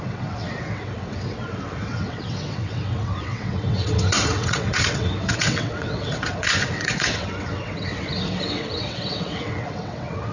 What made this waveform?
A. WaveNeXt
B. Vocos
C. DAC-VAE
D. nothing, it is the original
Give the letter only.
A